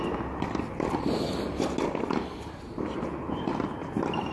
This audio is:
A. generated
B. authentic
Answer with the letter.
B